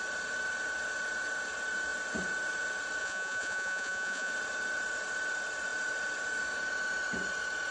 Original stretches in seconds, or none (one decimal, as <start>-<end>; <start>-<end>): 0.0-3.0; 4.3-7.7